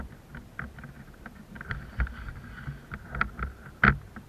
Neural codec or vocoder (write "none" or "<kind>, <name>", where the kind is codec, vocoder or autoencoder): none